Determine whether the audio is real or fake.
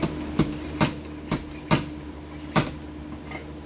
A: real